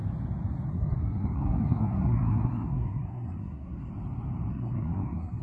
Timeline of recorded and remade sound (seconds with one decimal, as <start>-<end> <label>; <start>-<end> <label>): 0.0-0.7 recorded; 0.7-3.9 remade; 3.9-4.5 recorded; 4.5-5.4 remade